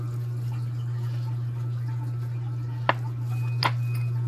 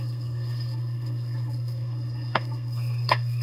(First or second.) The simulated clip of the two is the second